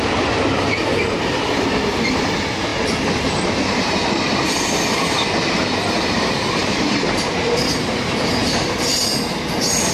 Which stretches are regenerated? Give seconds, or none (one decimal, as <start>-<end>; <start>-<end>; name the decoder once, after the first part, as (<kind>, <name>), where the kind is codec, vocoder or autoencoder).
6.6-7.5 (vocoder, BigVGAN v2)